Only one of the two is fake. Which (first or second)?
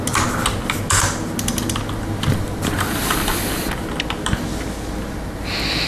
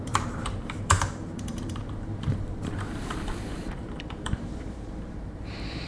second